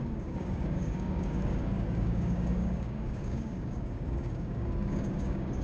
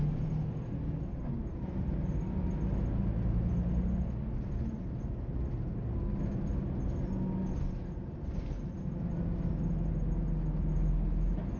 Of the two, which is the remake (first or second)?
first